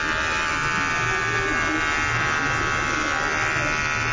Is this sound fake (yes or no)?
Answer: no